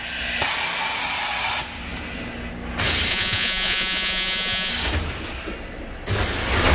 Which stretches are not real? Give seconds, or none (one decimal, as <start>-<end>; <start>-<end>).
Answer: 3.1-4.7